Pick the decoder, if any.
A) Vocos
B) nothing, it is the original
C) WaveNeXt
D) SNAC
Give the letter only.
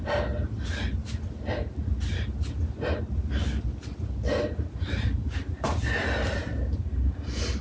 B